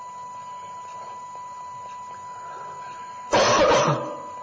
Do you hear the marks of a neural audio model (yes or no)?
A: no